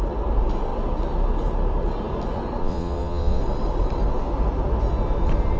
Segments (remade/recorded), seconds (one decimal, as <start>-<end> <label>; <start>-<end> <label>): 0.0-2.6 recorded; 2.6-3.4 remade; 3.4-5.6 recorded